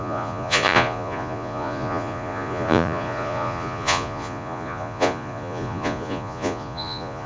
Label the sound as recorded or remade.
remade